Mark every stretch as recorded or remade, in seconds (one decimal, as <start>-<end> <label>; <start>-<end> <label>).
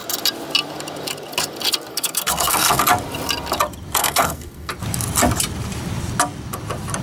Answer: 0.0-1.9 recorded; 1.9-2.8 remade; 2.8-4.0 recorded; 4.0-4.7 remade; 4.7-7.0 recorded